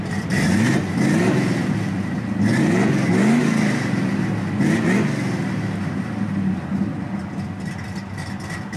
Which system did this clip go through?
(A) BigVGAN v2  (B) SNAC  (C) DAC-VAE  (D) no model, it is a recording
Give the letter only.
D